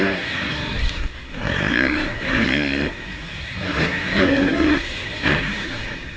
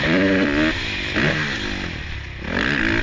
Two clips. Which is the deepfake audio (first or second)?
first